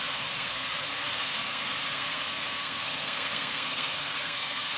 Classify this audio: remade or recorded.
remade